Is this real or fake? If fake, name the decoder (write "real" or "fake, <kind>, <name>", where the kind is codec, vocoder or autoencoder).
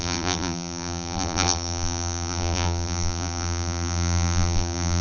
fake, vocoder, BigVGAN v2